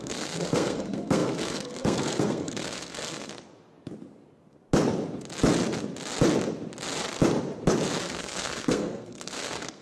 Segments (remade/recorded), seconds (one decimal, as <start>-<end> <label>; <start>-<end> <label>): 0.0-3.3 remade; 3.3-8.0 recorded; 8.0-9.8 remade